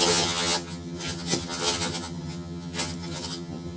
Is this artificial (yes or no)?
yes